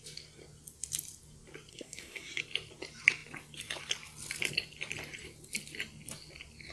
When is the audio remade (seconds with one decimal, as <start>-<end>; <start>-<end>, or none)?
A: 1.7-2.4